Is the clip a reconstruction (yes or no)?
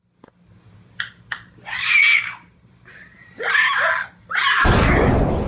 no